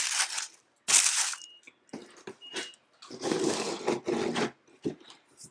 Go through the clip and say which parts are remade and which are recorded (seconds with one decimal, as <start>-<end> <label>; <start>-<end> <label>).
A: 0.0-5.5 recorded